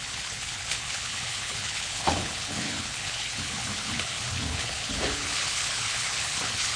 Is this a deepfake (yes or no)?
yes